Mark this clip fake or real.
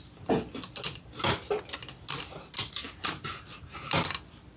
real